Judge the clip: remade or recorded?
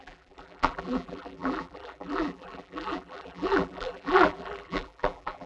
remade